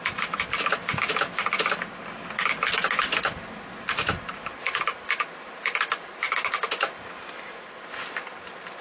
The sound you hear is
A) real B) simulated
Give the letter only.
A